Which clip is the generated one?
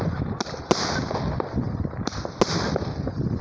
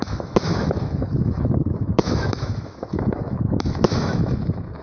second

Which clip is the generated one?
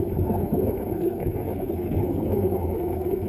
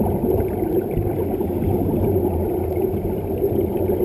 first